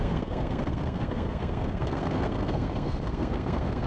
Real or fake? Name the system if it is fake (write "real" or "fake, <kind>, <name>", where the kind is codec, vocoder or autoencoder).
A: fake, codec, SNAC